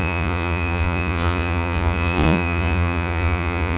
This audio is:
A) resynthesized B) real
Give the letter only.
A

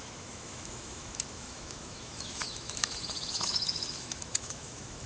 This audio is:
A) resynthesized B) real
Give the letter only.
A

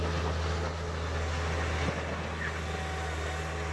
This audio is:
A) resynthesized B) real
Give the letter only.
B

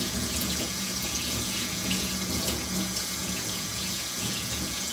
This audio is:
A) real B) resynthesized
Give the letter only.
B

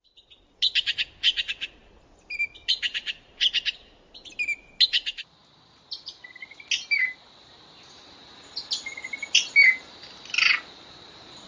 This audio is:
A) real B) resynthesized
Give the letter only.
A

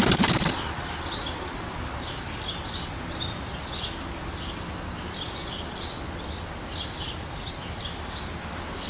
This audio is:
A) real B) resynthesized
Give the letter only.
A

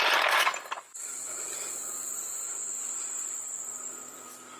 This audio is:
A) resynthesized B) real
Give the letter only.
B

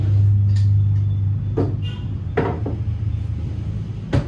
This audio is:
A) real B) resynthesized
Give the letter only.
A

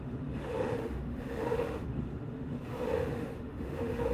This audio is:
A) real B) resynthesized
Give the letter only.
B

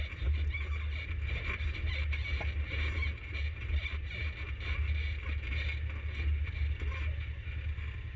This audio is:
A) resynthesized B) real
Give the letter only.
B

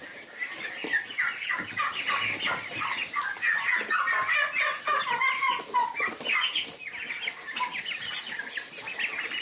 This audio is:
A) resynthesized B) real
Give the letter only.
B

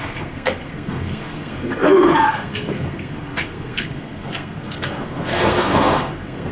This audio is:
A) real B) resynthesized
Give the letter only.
B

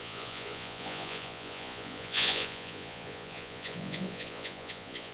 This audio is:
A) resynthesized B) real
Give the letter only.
A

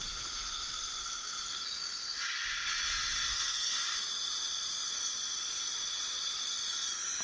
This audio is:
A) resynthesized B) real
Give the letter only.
B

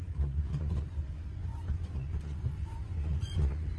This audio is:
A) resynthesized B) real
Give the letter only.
A